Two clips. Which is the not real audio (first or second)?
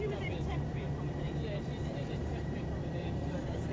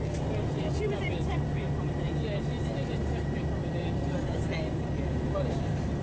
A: first